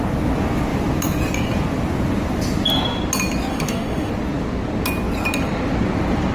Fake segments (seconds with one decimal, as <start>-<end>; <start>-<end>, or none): 3.5-4.1